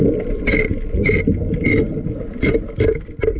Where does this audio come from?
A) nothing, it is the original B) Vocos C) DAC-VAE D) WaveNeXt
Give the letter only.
A